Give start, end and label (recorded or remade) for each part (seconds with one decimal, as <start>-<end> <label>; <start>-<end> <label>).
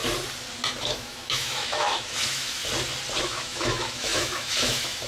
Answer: 0.0-0.8 recorded; 0.8-2.6 remade; 2.6-3.2 recorded; 3.2-5.1 remade